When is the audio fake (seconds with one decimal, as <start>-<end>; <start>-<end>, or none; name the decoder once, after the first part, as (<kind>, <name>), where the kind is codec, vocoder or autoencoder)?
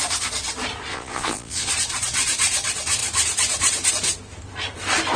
0.9-1.7 (vocoder, Vocos)